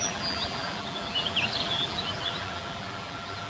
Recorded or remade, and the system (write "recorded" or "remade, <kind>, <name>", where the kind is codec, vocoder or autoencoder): remade, vocoder, BigVGAN v2